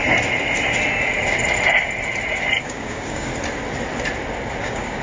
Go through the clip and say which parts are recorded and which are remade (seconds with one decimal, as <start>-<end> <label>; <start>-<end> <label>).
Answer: 0.0-2.6 recorded; 2.6-3.3 remade; 3.3-4.6 recorded; 4.6-5.0 remade